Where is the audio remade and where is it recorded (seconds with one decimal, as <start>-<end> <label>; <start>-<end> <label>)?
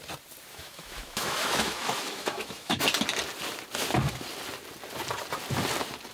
0.0-0.5 recorded; 0.5-2.8 remade; 2.8-6.1 recorded